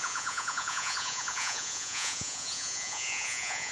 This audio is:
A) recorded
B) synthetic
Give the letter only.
B